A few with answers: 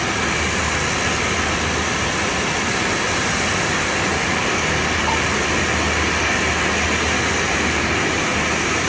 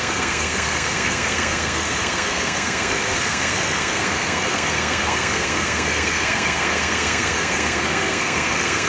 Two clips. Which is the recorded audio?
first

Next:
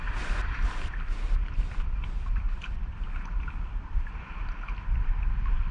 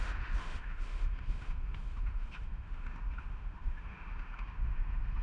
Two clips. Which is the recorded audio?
first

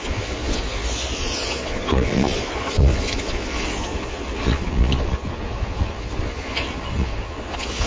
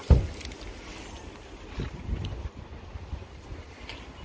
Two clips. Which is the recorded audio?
second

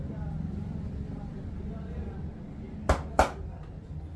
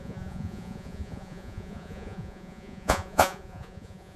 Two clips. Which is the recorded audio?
first